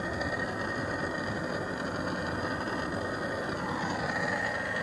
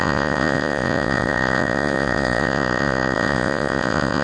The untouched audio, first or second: first